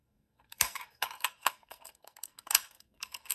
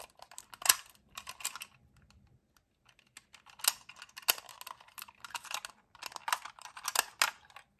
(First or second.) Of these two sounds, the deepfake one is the first